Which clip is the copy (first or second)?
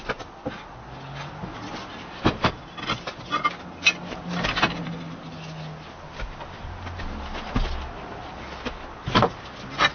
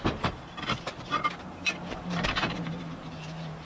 second